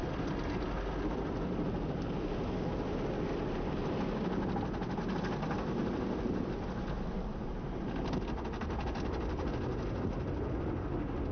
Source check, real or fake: real